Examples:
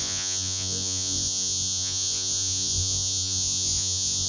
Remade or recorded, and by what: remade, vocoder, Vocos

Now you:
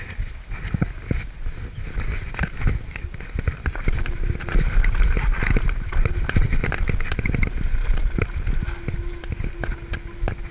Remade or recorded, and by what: recorded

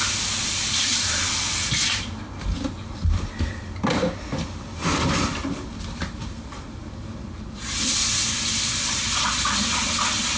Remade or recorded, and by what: recorded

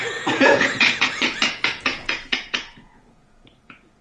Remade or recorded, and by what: remade, vocoder, Vocos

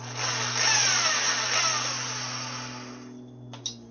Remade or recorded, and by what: recorded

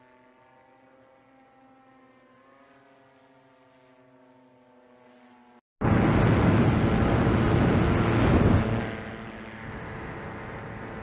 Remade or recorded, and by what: recorded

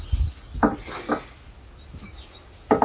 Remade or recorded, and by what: recorded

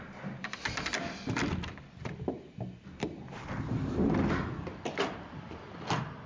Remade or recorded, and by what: recorded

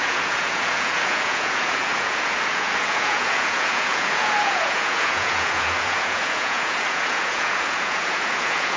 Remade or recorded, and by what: remade, vocoder, Vocos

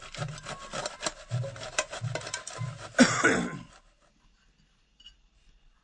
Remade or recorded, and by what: recorded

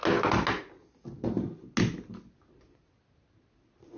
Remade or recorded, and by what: recorded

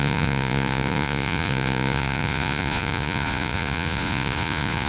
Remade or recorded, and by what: remade, vocoder, Vocos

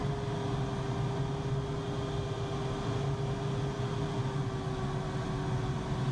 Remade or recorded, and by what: recorded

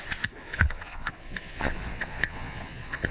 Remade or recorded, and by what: remade, vocoder, Vocos